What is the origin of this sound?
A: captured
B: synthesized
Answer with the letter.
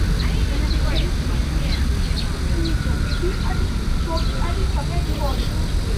A